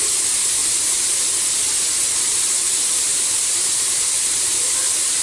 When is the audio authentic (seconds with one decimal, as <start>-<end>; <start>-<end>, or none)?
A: 0.6-2.4